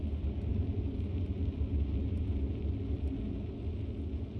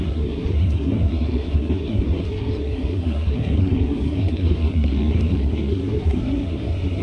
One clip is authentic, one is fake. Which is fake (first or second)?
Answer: second